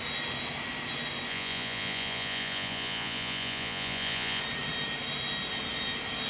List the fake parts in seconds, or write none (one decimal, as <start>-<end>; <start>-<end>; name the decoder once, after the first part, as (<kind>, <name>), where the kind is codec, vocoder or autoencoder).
1.3-4.4 (vocoder, Vocos)